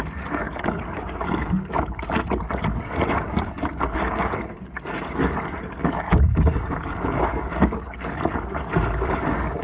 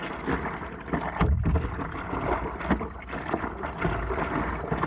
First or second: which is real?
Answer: second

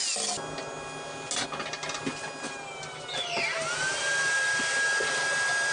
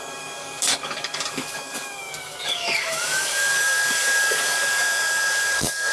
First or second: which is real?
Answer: first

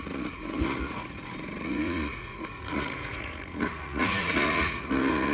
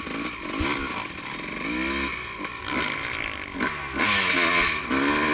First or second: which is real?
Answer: second